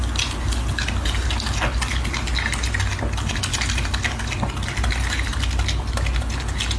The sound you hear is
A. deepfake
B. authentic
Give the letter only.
B